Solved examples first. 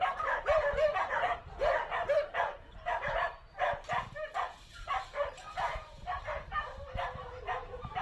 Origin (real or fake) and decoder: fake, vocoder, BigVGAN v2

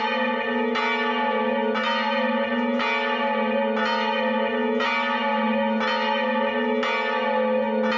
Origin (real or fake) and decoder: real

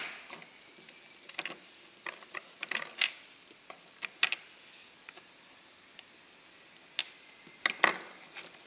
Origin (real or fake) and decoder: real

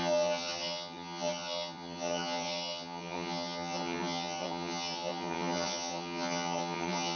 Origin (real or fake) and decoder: fake, vocoder, HiFi-GAN